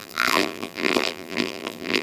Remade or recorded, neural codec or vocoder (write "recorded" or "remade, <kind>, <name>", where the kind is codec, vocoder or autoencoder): remade, vocoder, BigVGAN v2